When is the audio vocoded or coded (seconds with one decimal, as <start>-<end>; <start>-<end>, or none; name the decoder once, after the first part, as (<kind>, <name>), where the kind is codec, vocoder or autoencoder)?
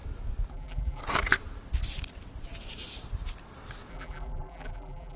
0.5-1.0 (vocoder, BigVGAN v2); 3.9-5.2